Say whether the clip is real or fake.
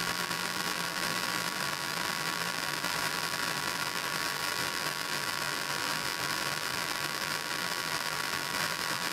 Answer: fake